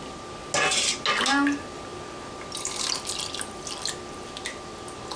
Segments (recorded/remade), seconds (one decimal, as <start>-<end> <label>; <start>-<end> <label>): 0.0-5.2 recorded

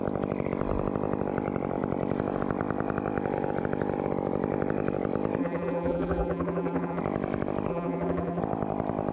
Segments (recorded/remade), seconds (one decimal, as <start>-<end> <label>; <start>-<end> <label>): 0.0-5.4 recorded; 5.4-7.0 remade; 7.0-7.7 recorded; 7.7-8.4 remade; 8.4-9.1 recorded

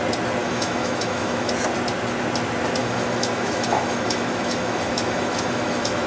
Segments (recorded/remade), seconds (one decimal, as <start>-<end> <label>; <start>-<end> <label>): 0.0-0.4 recorded; 0.4-1.5 remade; 1.5-2.8 recorded; 2.8-6.1 remade

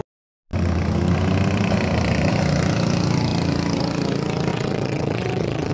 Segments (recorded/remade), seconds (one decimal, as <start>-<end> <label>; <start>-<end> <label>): 0.0-4.5 recorded; 4.5-5.7 remade

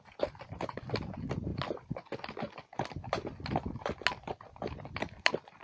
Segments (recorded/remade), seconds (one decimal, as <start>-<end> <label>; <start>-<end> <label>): 0.0-1.5 remade; 1.5-4.9 recorded; 4.9-5.6 remade